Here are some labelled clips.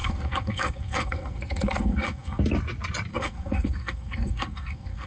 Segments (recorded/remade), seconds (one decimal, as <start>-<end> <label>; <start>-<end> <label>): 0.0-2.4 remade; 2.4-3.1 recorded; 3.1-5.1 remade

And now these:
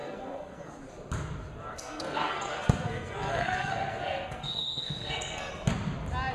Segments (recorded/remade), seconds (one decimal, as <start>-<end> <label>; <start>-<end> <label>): 0.0-0.8 remade; 0.8-1.7 recorded; 1.7-5.5 remade; 5.5-6.3 recorded

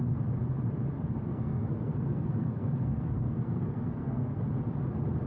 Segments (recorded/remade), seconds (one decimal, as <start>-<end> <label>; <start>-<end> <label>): 0.0-1.3 recorded; 1.3-4.4 remade; 4.4-5.3 recorded

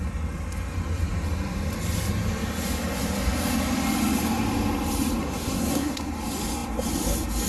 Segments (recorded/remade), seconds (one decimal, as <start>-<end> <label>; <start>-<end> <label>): 0.0-5.2 recorded; 5.2-6.1 remade; 6.1-7.5 recorded

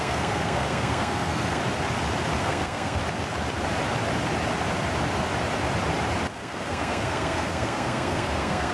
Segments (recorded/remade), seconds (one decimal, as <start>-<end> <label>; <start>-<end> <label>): 0.0-1.6 remade; 1.6-2.4 recorded; 2.4-3.0 remade; 3.0-6.3 recorded; 6.3-8.7 remade